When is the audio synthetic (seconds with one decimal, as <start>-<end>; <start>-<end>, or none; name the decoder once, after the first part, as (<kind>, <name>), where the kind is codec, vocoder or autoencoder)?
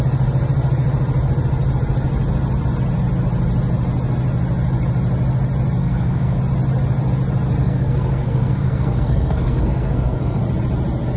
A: 5.8-6.4 (codec, SNAC); 7.6-10.4